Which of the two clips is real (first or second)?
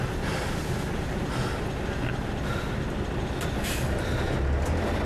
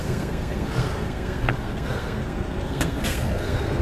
first